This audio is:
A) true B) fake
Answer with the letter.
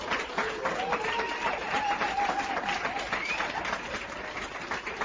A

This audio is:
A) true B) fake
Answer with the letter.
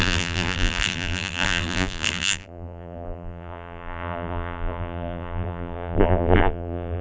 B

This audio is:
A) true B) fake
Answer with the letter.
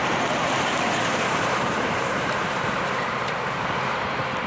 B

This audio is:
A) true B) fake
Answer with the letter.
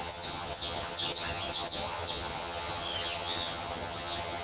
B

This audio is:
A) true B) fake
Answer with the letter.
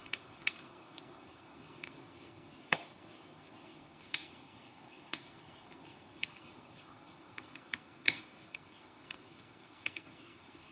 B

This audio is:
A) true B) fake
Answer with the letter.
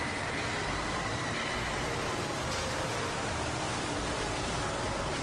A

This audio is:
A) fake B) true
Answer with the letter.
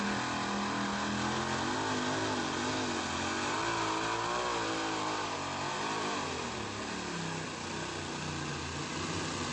B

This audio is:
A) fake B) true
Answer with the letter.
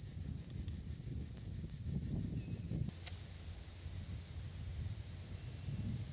B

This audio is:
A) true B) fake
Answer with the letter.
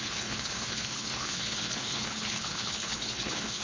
B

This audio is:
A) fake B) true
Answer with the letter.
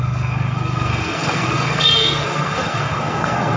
A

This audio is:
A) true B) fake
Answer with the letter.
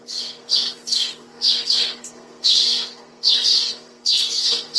B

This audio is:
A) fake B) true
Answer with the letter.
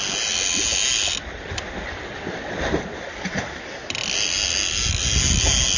B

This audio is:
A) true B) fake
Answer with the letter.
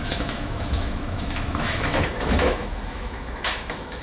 B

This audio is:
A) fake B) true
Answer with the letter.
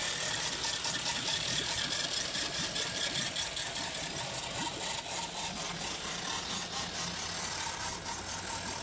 B